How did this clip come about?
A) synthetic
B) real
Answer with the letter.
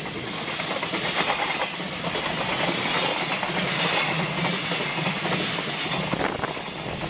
B